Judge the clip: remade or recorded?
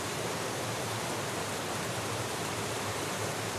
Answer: remade